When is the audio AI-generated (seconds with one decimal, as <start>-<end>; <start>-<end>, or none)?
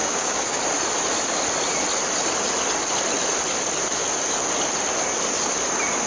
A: 0.0-0.6